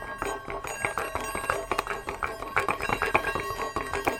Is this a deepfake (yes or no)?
no